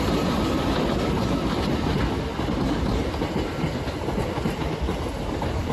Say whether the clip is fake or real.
real